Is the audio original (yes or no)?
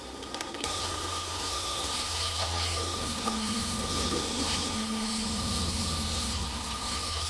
no